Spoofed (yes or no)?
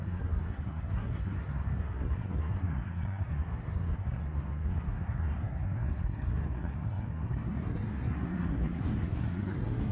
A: yes